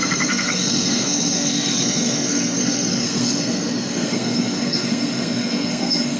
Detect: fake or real fake